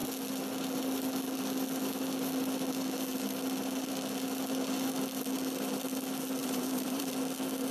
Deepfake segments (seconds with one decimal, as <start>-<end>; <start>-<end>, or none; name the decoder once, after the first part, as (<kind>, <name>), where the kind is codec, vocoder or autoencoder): 6.4-7.1 (vocoder, BigVGAN v2)

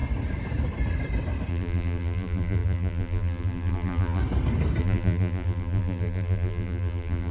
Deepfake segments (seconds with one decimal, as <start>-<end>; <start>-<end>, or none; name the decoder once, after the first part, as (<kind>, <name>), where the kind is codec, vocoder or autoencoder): 1.5-4.2 (vocoder, BigVGAN v2); 4.8-7.3

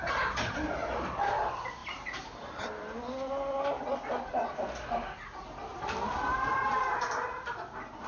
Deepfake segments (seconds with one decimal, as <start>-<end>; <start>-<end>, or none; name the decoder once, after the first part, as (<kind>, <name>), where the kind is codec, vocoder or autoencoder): 5.7-7.1 (vocoder, BigVGAN v2)

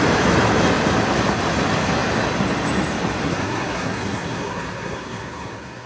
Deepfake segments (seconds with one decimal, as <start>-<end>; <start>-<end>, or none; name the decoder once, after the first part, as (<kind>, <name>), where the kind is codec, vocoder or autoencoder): 3.2-5.9 (codec, SNAC)

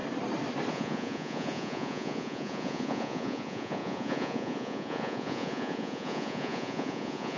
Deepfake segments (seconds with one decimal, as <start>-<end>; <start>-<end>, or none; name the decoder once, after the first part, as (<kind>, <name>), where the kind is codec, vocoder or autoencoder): 0.7-7.4 (vocoder, Vocos)

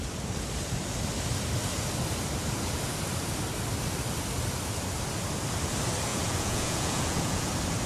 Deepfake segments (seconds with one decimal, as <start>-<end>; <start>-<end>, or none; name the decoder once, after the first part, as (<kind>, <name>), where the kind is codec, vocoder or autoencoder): 6.1-7.5 (vocoder, Vocos)

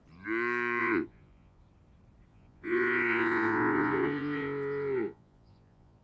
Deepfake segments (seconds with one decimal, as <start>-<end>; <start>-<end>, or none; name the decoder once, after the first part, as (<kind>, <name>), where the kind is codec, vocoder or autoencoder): 0.8-1.6 (vocoder, Vocos); 2.3-6.0